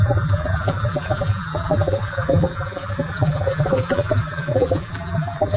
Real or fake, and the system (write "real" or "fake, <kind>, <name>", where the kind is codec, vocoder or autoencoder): fake, vocoder, BigVGAN v2